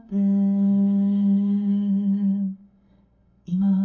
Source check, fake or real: fake